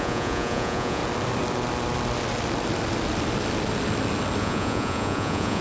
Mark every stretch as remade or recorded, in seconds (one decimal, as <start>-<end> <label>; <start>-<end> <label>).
0.0-1.0 remade; 1.0-4.4 recorded; 4.4-5.6 remade

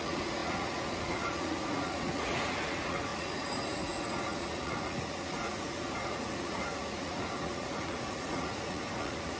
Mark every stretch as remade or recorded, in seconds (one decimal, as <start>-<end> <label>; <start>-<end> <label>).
0.0-9.4 remade

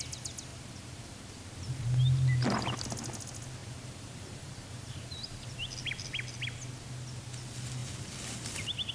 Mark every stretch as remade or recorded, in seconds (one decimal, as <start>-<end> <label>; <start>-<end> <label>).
0.0-0.5 recorded; 0.5-1.3 remade; 1.3-3.6 recorded; 3.6-5.5 remade; 5.5-8.9 recorded